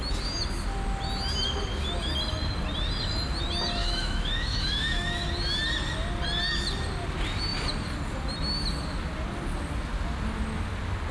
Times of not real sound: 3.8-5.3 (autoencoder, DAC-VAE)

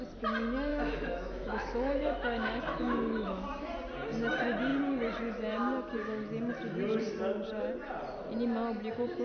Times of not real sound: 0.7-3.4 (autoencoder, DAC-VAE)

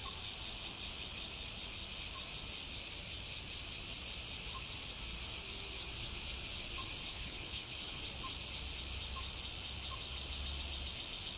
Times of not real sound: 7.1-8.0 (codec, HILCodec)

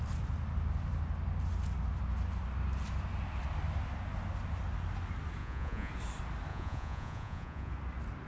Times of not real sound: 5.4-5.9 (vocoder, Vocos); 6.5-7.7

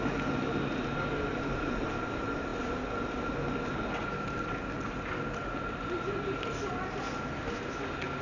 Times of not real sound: none

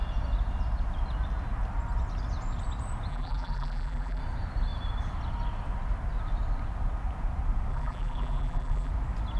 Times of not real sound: 3.1-4.2 (vocoder, BigVGAN v2); 7.7-8.9

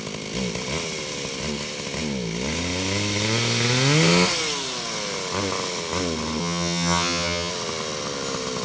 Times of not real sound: 6.4-7.5 (vocoder, HiFi-GAN)

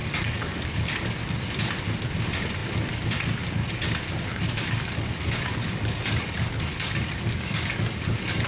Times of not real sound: 0.0-0.9 (codec, DAC); 4.3-8.5